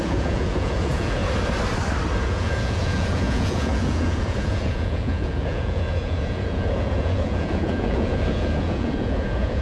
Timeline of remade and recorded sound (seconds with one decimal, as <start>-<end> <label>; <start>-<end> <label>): 0.0-1.2 remade; 1.2-2.2 recorded; 2.2-9.6 remade